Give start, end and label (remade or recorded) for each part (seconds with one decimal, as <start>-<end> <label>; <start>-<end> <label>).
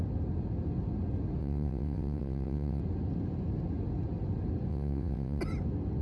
0.0-1.4 recorded; 1.4-2.8 remade; 2.8-4.7 recorded; 4.7-5.4 remade; 5.4-6.0 recorded